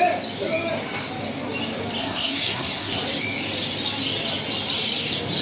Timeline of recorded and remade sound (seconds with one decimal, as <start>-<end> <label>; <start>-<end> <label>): 0.0-2.0 recorded; 2.0-3.0 remade; 3.0-5.4 recorded

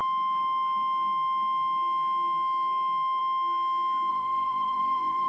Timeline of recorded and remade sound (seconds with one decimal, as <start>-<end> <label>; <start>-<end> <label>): 0.0-4.1 recorded; 4.1-5.3 remade

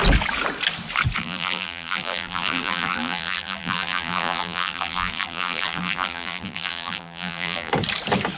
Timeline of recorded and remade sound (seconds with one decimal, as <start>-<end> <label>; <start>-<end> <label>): 0.0-1.2 recorded; 1.2-7.7 remade; 7.7-8.4 recorded

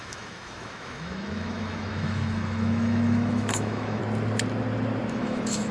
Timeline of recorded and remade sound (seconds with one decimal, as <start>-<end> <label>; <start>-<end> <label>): 0.0-4.0 remade; 4.0-5.1 recorded; 5.1-5.7 remade

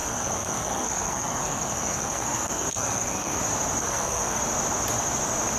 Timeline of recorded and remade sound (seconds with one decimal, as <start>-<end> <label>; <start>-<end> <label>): 0.0-3.4 remade; 3.4-3.8 recorded; 3.8-4.4 remade; 4.4-5.6 recorded

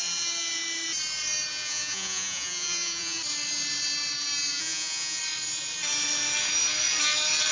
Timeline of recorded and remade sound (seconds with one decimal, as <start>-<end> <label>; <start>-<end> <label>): 0.0-1.5 recorded; 1.5-3.2 remade; 3.2-4.5 recorded; 4.5-5.2 remade; 5.2-7.5 recorded